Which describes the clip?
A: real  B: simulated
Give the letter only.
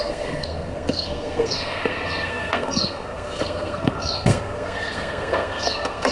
B